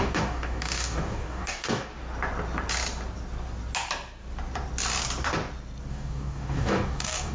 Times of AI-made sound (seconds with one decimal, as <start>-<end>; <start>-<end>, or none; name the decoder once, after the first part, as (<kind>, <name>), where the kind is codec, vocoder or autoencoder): 0.0-1.9 (codec, DAC); 5.9-7.3